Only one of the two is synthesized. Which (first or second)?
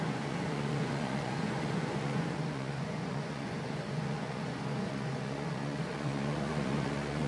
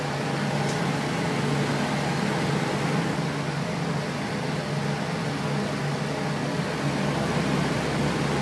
first